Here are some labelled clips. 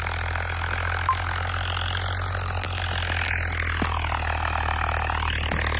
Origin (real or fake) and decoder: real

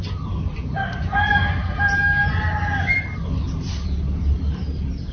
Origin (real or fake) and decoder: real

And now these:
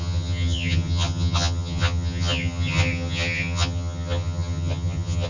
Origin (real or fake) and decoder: fake, vocoder, HiFi-GAN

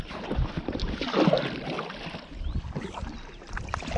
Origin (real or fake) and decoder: real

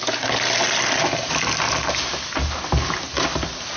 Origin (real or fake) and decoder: real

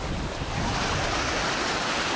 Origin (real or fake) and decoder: real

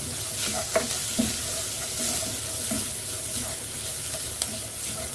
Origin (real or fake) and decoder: real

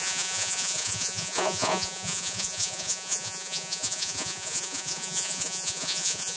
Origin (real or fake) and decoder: fake, vocoder, Vocos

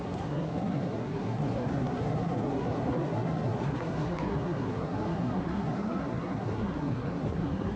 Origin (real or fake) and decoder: fake, codec, SNAC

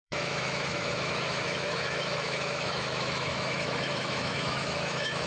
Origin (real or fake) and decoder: fake, autoencoder, DAC-VAE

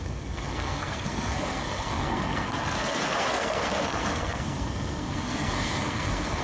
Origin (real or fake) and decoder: fake, codec, SNAC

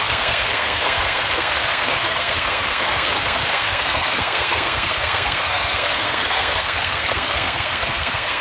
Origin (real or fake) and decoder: fake, codec, SNAC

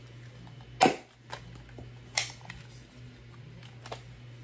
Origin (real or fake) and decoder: real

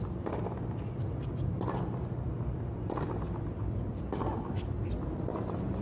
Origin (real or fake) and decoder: real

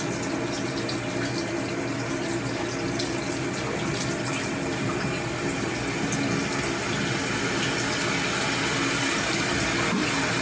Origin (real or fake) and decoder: real